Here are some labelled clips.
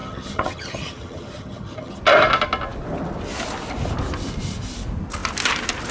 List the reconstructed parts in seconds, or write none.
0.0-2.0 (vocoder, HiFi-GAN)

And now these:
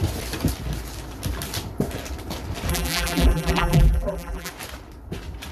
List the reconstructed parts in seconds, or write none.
2.7-4.5 (vocoder, BigVGAN v2)

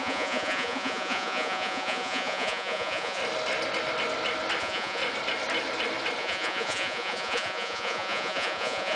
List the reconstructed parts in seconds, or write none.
0.0-3.2 (vocoder, Vocos); 4.6-5.0; 6.2-9.0

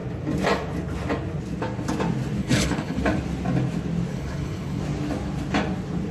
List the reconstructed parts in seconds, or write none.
2.4-3.0 (codec, HILCodec); 4.1-4.8

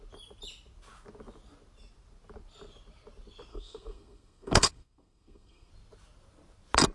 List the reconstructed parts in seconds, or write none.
3.5-5.7 (codec, SNAC)

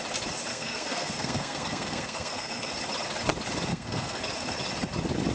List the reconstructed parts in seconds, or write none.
0.5-2.7 (codec, SNAC); 3.7-4.2

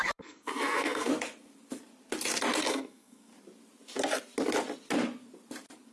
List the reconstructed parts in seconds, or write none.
0.0-1.1 (codec, SNAC); 2.7-3.3